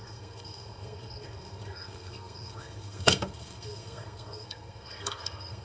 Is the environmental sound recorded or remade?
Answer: remade